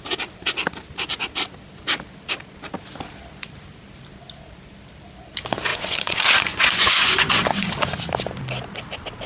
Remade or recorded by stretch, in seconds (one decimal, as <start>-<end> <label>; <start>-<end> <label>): 0.0-5.7 recorded; 5.7-7.7 remade; 7.7-9.3 recorded